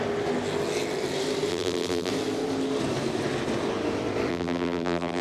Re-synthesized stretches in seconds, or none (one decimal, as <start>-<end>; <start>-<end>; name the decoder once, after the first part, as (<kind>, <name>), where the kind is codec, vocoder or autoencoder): 1.5-2.1 (vocoder, BigVGAN v2); 4.3-5.2